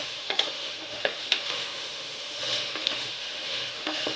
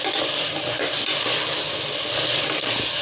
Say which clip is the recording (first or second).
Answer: second